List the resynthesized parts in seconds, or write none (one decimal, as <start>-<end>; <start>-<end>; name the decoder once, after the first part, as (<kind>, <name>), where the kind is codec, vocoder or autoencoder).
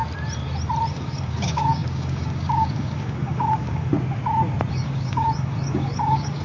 0.9-3.9 (codec, DAC); 4.7-6.4